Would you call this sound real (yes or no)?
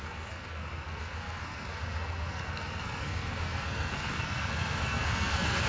no